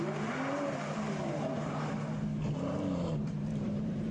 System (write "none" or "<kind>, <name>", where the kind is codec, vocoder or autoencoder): vocoder, BigVGAN v2